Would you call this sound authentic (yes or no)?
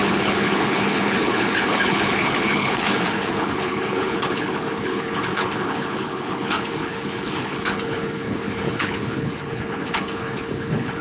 no